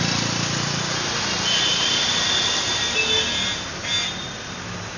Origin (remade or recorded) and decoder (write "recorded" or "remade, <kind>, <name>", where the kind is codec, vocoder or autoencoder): recorded